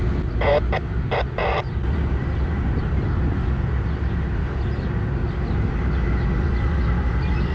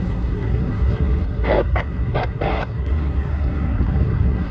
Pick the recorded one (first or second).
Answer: first